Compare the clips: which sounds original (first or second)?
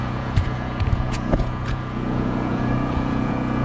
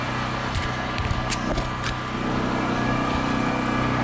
second